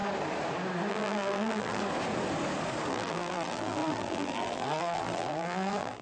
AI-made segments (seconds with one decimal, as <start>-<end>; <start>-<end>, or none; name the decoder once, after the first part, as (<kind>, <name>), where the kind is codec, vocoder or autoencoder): 0.9-1.8 (vocoder, BigVGAN v2); 2.9-6.0

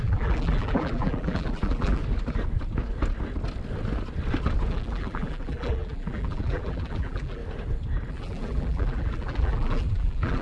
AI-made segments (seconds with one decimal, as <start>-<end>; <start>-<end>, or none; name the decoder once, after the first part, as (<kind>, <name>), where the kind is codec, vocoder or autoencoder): 0.0-2.0 (vocoder, BigVGAN v2); 4.7-7.4; 8.1-10.4

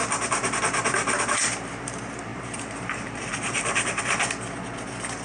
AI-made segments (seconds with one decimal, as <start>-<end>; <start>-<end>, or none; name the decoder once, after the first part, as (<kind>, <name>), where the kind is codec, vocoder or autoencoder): 2.3-4.0 (vocoder, BigVGAN v2)

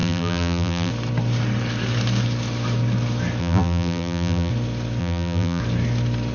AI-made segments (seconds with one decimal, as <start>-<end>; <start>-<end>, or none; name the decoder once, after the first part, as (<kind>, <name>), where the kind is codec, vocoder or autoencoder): 0.0-0.9 (vocoder, BigVGAN v2); 3.4-4.5; 5.0-5.6